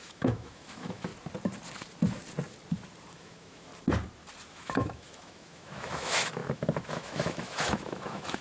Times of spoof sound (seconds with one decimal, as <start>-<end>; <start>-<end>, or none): 0.0-1.1; 3.1-3.7; 4.5-8.4